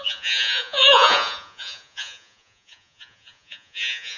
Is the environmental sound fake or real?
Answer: fake